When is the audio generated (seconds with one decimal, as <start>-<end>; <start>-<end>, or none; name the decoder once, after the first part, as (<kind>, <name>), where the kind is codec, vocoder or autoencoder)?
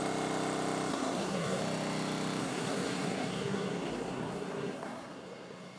0.9-1.6 (codec, SNAC); 2.4-5.8